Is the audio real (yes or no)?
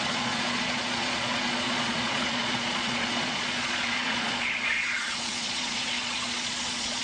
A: no